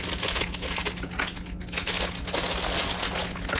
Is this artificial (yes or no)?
no